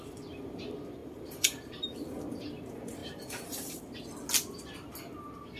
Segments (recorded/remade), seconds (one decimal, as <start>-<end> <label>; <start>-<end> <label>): 0.0-1.0 recorded; 1.0-2.2 remade; 2.2-3.0 recorded; 3.0-3.8 remade; 3.8-5.6 recorded